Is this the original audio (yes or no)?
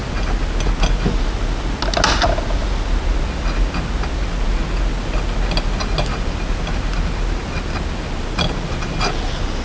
yes